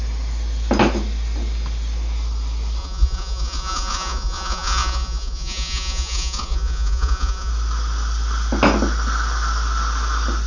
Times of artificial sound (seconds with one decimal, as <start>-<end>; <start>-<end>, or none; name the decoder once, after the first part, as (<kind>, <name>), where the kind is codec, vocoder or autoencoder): 2.8-7.5 (vocoder, Vocos)